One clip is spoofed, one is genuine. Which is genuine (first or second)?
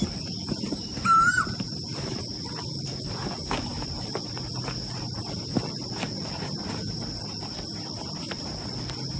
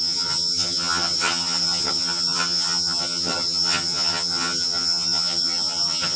first